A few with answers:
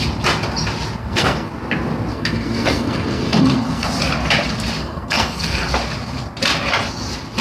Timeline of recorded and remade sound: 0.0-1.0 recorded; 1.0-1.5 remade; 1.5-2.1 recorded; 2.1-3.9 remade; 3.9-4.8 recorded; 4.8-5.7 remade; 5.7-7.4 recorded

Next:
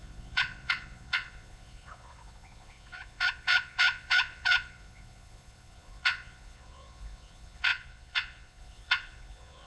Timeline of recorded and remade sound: 0.0-9.7 remade

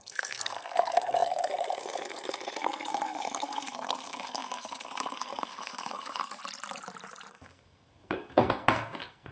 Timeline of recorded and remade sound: 0.0-6.4 remade; 6.4-7.3 recorded; 7.3-9.3 remade

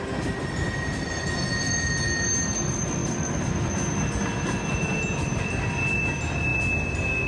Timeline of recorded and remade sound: 0.0-7.3 recorded